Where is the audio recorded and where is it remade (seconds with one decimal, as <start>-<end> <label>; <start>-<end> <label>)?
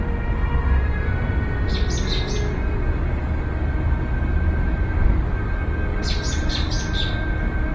0.0-7.7 recorded